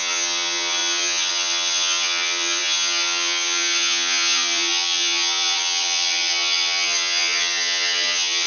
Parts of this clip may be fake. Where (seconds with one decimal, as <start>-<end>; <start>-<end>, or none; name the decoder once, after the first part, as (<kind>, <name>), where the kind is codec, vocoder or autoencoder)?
0.0-8.5 (vocoder, HiFi-GAN)